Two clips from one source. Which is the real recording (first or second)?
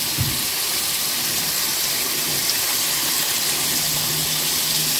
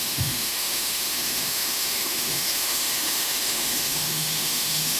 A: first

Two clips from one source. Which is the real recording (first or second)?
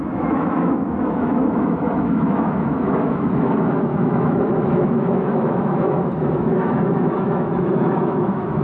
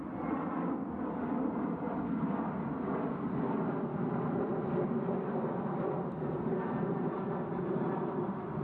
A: second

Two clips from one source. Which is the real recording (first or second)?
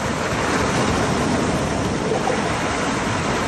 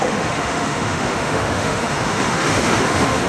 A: first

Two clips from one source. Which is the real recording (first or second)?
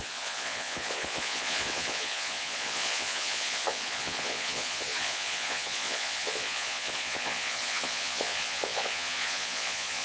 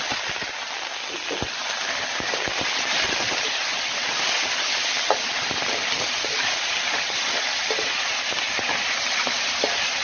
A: second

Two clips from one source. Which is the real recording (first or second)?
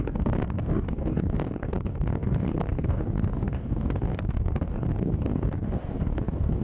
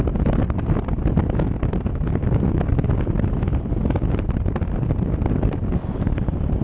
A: second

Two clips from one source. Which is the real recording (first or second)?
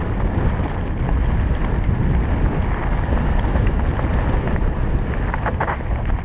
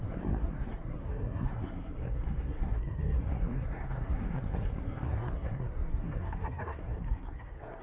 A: first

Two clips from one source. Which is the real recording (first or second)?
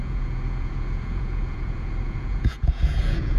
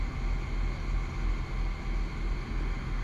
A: second